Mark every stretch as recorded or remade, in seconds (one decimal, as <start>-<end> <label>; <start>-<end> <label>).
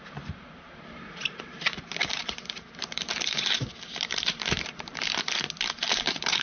0.0-5.2 remade; 5.2-5.9 recorded; 5.9-6.4 remade